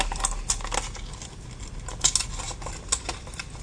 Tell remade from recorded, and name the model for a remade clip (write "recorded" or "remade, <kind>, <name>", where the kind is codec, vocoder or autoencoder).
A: recorded